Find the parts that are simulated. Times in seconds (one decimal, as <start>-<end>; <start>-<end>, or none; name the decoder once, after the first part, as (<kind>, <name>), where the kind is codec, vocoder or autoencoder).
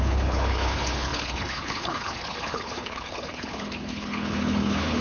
0.0-5.0 (codec, HILCodec)